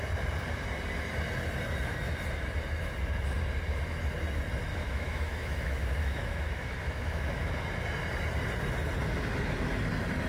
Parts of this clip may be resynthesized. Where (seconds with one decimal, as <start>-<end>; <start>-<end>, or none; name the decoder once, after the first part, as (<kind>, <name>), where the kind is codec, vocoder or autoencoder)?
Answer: 4.7-7.5 (autoencoder, DAC-VAE)